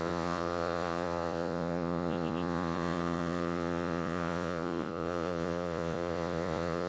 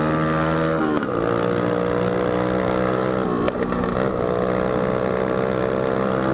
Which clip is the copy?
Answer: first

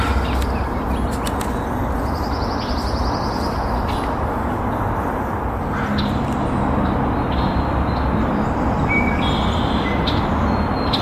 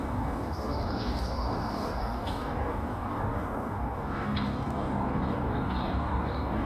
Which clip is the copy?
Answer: second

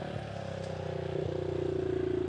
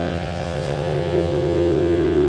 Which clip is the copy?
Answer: second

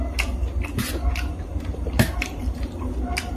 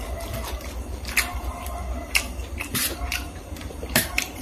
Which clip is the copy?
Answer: second